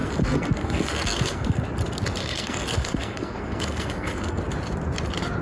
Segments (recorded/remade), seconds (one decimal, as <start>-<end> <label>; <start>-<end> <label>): 0.0-1.6 remade; 1.6-2.2 recorded; 2.2-4.4 remade; 4.4-5.4 recorded